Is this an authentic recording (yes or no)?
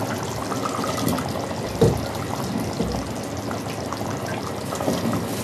yes